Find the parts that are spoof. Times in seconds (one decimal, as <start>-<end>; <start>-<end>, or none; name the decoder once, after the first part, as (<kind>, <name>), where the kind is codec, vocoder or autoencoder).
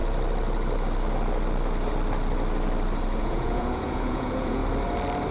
3.2-4.6 (vocoder, Vocos)